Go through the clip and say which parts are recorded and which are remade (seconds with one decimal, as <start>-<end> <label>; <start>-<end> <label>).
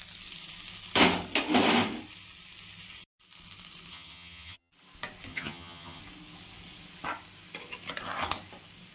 0.0-3.9 recorded; 3.9-4.7 remade; 4.7-5.3 recorded; 5.3-6.0 remade; 6.0-8.9 recorded